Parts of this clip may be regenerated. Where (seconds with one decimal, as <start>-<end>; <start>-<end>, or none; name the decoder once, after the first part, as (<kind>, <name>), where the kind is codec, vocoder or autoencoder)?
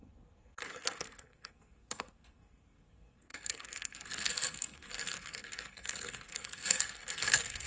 0.0-7.7 (codec, SNAC)